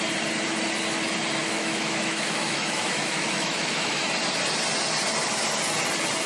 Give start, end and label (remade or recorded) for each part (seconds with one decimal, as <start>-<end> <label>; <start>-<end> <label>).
0.0-1.4 recorded; 1.4-4.0 remade; 4.0-6.3 recorded